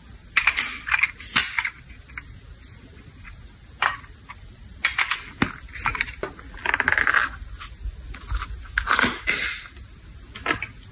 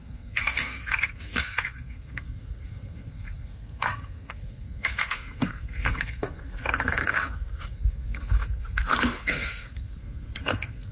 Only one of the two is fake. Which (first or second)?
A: second